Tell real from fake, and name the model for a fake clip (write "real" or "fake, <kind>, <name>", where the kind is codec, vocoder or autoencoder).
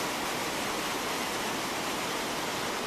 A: real